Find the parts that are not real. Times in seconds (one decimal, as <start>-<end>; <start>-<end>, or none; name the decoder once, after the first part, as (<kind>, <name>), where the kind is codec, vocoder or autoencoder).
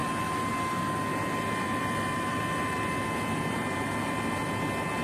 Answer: 1.1-4.1 (vocoder, BigVGAN v2)